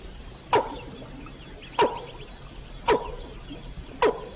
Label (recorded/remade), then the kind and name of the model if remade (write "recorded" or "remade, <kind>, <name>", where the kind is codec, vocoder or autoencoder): recorded